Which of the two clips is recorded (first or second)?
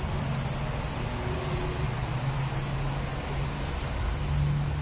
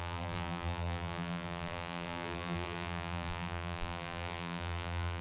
first